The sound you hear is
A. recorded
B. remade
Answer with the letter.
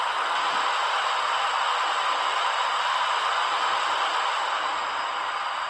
A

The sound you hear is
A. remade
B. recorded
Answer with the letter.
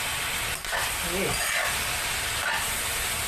B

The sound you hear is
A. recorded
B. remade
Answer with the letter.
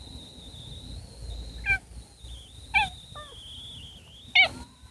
A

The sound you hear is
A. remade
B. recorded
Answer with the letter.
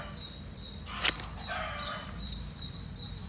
A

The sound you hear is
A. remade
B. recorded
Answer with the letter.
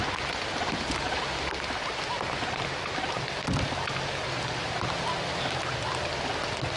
B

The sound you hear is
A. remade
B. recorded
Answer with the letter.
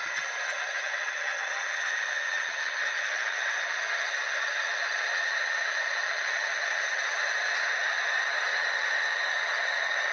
A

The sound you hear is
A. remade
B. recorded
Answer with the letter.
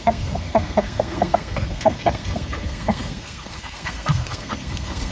A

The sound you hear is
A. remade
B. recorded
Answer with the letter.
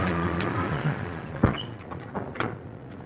A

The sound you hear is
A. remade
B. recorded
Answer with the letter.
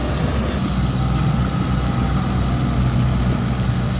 B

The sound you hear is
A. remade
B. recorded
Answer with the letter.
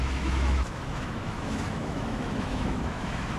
A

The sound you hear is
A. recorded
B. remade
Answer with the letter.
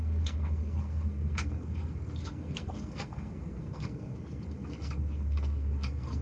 B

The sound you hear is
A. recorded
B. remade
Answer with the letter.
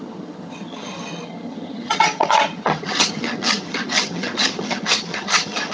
B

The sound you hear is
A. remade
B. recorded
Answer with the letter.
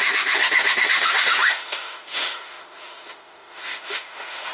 A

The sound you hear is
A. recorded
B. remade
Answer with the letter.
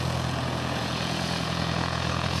B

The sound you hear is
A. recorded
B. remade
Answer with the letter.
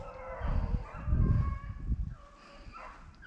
A